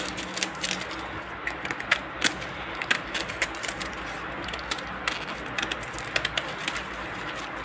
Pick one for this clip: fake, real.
real